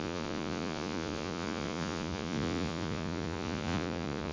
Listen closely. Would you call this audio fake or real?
fake